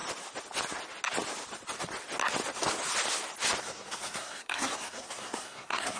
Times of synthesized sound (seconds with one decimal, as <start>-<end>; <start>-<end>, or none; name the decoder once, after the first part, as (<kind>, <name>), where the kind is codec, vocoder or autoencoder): 3.6-6.0 (codec, SNAC)